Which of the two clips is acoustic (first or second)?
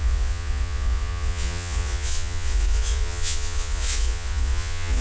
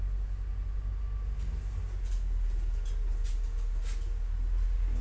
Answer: second